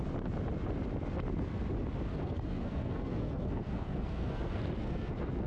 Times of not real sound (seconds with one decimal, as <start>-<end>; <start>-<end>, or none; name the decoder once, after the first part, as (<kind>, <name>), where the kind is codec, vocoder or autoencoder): 2.1-5.5 (codec, SNAC)